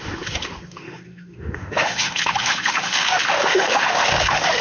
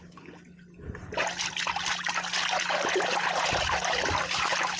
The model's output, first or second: first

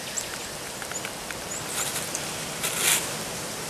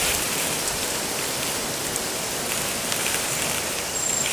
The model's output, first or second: second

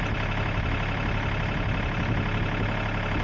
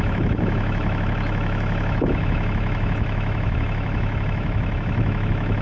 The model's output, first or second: second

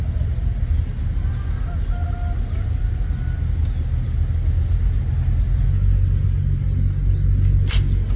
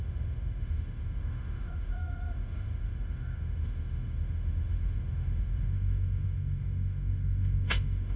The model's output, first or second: second